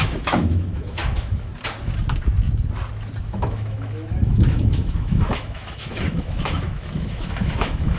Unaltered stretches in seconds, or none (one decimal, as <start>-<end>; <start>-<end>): 1.5-3.2